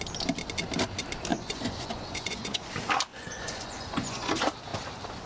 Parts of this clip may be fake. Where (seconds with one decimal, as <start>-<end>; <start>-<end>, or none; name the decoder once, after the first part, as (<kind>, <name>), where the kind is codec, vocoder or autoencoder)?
1.3-2.7 (vocoder, Vocos); 3.1-4.3